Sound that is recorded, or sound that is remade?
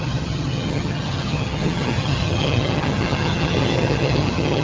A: remade